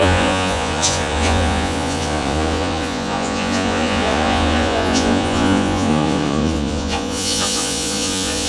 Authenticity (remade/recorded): remade